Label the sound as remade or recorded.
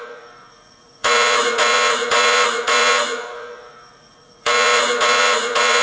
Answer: remade